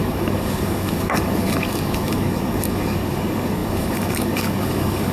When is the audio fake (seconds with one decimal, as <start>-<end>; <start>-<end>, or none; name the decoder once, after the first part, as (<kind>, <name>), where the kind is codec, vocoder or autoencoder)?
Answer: 0.0-5.1 (codec, DAC)